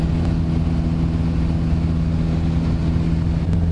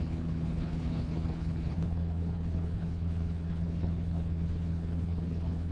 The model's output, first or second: second